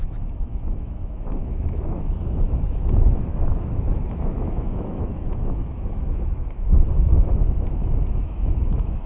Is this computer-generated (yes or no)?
yes